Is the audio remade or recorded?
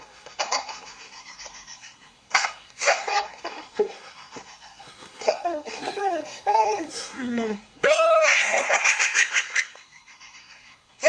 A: remade